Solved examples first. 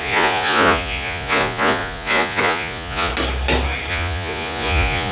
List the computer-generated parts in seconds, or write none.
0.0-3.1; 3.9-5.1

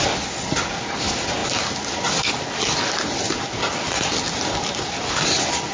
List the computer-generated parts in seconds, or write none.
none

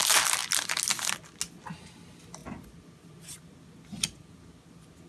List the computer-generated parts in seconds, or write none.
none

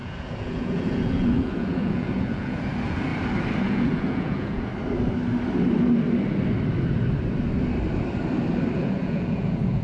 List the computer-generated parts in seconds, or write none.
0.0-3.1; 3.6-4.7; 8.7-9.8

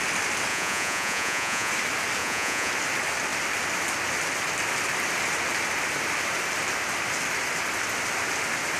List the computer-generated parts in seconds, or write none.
0.5-1.7; 2.2-2.7

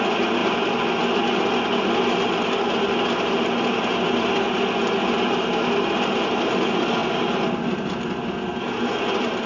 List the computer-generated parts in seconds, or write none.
none

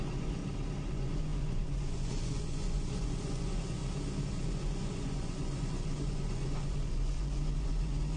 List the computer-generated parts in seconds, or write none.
0.0-0.4; 0.9-3.8; 4.3-8.2

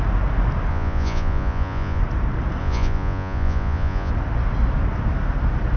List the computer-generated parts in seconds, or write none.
0.7-2.0; 2.6-4.1